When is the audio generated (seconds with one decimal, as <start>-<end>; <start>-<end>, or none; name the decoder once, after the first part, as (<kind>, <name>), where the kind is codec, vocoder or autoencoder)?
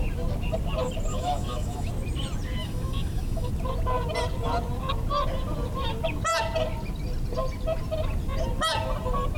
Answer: 1.1-1.9 (autoencoder, DAC-VAE); 2.6-3.5